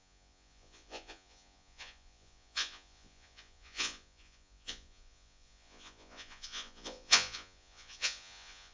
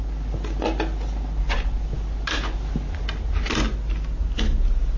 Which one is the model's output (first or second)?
first